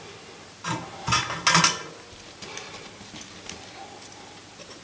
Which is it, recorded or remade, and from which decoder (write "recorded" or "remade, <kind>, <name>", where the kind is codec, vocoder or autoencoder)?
recorded